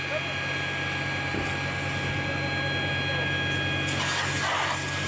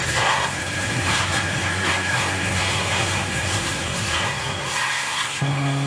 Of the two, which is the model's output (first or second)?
second